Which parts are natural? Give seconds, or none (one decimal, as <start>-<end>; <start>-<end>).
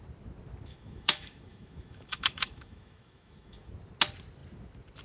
0.0-0.7; 3.7-5.0